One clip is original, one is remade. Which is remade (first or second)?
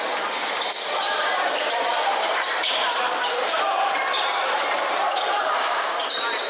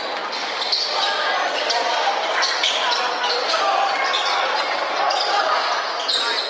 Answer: first